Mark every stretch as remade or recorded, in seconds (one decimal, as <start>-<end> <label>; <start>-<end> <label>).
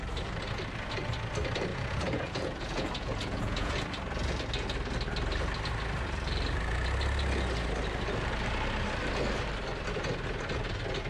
0.0-1.7 recorded; 1.7-3.7 remade; 3.7-11.1 recorded